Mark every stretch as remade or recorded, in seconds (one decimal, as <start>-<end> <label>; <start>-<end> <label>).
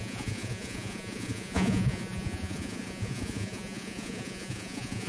0.0-5.1 remade